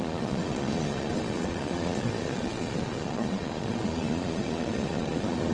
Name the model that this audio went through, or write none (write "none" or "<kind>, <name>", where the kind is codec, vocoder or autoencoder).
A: vocoder, Vocos